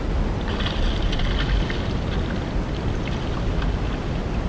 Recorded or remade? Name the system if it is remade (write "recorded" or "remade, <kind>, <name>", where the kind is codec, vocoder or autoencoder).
recorded